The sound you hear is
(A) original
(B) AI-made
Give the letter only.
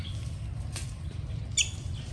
A